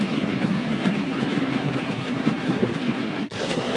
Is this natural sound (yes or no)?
no